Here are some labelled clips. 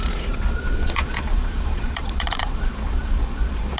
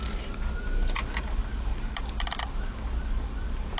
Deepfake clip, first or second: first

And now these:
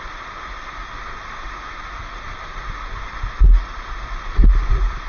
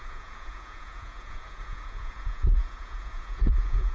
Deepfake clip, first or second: second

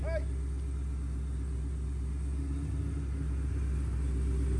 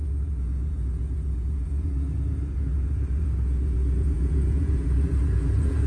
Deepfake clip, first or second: second